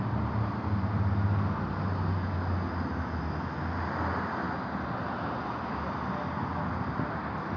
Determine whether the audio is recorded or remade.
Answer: recorded